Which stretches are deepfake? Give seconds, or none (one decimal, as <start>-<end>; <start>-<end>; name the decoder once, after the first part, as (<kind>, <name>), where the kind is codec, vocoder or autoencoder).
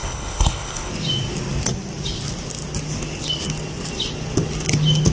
0.0-0.9 (codec, HILCodec)